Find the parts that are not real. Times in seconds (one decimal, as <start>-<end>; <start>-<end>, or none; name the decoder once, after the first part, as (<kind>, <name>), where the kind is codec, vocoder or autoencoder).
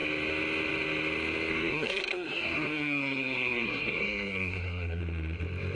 1.5-5.0 (codec, SNAC)